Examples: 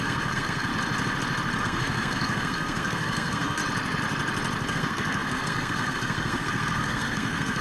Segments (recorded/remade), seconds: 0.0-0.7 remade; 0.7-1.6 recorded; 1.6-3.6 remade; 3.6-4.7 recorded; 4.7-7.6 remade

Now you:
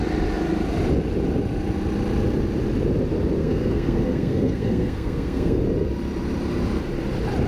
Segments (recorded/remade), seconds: 0.0-3.4 recorded; 3.4-5.6 remade; 5.6-7.5 recorded

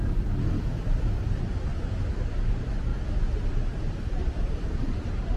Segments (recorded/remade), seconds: 0.0-2.9 remade; 2.9-3.5 recorded; 3.5-5.4 remade

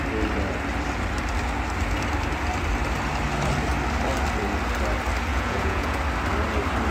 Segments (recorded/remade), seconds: 0.0-5.3 recorded; 5.3-6.0 remade; 6.0-6.9 recorded

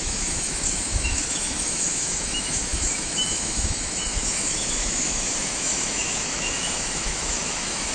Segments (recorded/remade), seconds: 0.0-7.9 remade

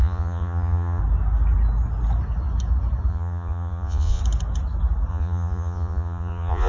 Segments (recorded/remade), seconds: 0.0-1.0 remade; 1.0-3.1 recorded; 3.1-4.2 remade; 4.2-5.1 recorded; 5.1-6.7 remade

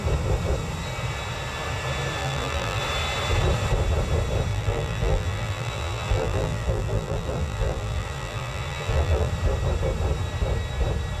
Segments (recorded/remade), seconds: 0.0-2.2 recorded; 2.2-2.8 remade; 2.8-4.5 recorded; 4.5-9.3 remade; 9.3-11.2 recorded

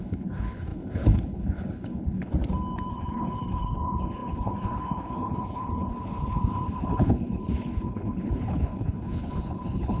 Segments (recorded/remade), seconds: 0.0-2.3 remade; 2.3-2.9 recorded; 2.9-10.0 remade